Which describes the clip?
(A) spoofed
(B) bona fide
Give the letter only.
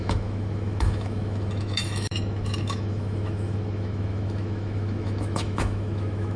A